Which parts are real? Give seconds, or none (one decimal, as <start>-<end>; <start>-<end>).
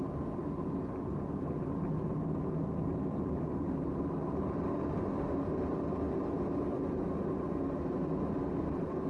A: 0.0-9.1